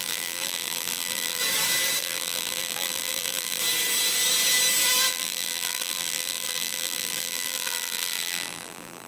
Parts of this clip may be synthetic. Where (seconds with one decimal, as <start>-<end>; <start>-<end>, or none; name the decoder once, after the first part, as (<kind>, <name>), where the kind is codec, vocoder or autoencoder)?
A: 0.0-1.4 (vocoder, BigVGAN v2); 2.0-3.6; 5.1-9.1